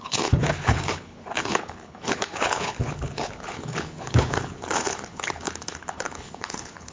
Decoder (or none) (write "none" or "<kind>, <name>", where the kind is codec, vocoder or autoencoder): codec, HILCodec